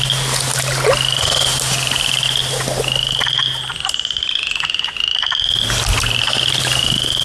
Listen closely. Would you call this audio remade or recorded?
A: recorded